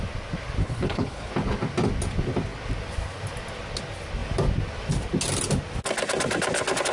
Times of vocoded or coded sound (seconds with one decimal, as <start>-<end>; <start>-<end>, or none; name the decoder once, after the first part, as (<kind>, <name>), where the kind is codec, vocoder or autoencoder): 0.6-1.3 (codec, HILCodec)